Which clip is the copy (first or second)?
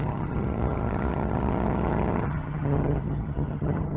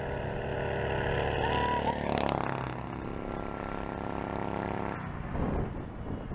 first